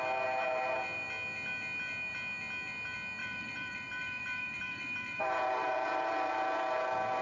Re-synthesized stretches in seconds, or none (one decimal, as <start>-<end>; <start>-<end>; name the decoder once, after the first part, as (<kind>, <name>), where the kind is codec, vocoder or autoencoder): 3.2-6.3 (vocoder, BigVGAN v2)